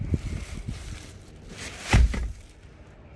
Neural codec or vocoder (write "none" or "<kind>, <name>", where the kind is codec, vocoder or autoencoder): none